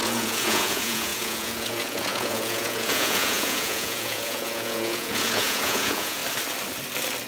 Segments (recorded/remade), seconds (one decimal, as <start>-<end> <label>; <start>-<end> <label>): 0.0-6.2 remade; 6.2-7.3 recorded